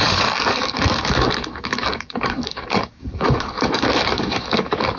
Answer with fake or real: fake